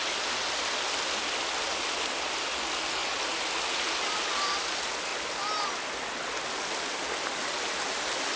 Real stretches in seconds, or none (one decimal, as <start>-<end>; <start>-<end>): 0.0-8.4